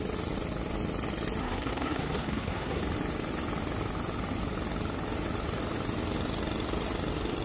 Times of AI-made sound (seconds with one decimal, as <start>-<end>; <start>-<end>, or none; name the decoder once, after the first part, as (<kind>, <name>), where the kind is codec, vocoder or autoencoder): 1.4-2.8 (codec, SNAC)